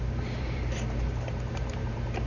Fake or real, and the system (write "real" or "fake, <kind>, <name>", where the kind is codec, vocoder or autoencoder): fake, vocoder, BigVGAN v2